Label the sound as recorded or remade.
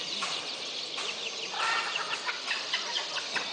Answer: recorded